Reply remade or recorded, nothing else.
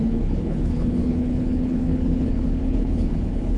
remade